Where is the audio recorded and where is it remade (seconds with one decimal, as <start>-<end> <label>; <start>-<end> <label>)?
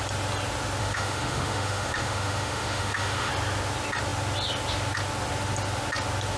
0.0-0.8 recorded; 0.8-3.3 remade; 3.3-6.4 recorded